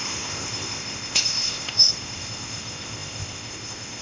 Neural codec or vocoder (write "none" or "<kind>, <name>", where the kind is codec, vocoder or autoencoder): codec, ZipCodec